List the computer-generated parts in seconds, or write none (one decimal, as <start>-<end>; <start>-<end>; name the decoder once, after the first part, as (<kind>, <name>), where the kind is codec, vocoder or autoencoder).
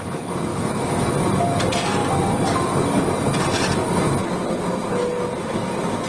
0.5-1.1 (autoencoder, DAC-VAE)